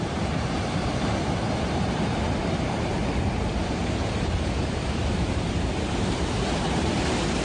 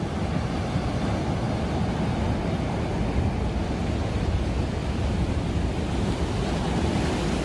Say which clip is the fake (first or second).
first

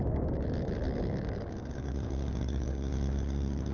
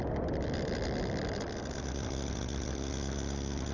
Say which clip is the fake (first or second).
first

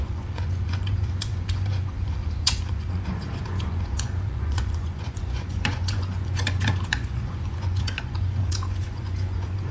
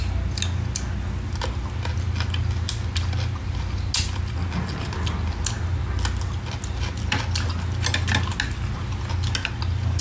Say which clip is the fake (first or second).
first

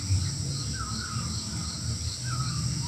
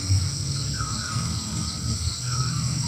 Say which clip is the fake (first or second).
second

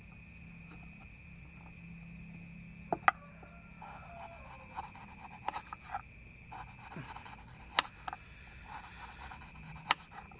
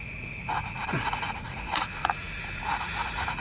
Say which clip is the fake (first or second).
second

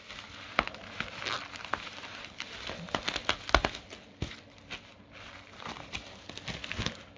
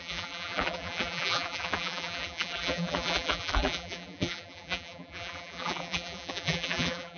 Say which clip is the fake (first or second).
second